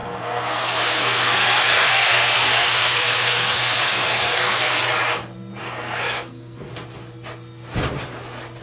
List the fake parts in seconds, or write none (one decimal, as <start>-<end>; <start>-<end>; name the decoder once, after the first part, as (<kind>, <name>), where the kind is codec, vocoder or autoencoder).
0.0-4.8 (codec, SNAC); 5.6-6.7